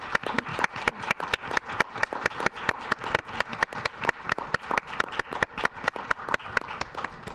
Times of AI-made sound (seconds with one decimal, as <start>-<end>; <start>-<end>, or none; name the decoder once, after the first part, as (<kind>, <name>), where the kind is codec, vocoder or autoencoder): none